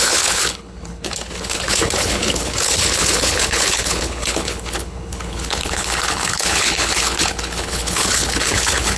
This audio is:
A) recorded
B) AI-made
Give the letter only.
B